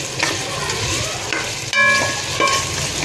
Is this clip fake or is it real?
real